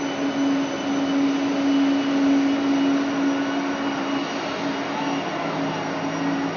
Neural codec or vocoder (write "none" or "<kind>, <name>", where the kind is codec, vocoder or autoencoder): none